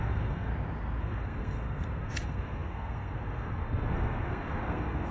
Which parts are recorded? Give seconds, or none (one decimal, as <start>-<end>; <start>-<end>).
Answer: 0.5-1.0